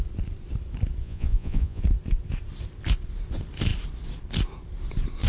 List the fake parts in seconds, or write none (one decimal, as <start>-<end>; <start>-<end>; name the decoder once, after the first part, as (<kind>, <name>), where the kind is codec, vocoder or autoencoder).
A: 1.0-1.8 (vocoder, Vocos)